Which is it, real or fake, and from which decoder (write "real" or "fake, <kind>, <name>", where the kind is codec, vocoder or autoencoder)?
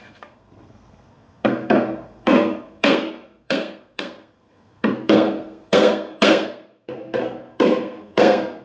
fake, codec, SNAC